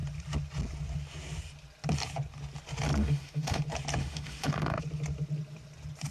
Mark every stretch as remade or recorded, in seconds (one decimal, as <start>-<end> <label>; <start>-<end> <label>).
0.0-3.0 recorded; 3.0-3.6 remade; 3.6-4.0 recorded; 4.0-4.8 remade; 4.8-6.1 recorded